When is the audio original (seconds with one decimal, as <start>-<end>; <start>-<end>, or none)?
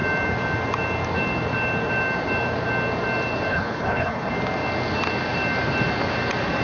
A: 0.0-3.5; 4.3-6.6